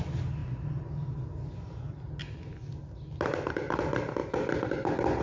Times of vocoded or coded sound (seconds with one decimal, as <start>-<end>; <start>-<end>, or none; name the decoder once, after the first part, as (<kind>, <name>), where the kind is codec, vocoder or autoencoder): none